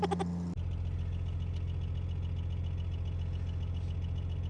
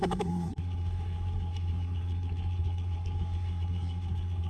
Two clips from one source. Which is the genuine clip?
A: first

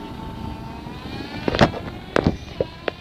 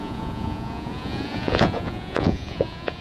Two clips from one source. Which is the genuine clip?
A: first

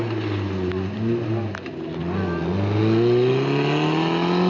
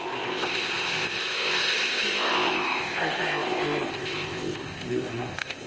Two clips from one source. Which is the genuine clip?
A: first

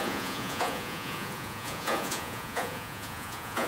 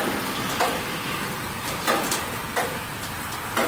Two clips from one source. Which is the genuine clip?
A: second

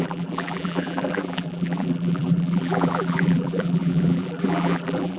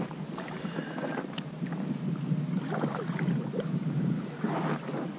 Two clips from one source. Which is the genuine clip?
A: second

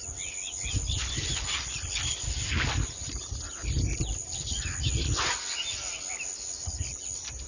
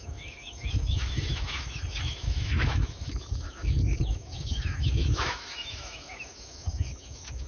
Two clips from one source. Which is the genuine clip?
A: first